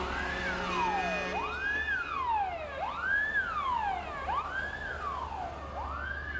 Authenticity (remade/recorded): recorded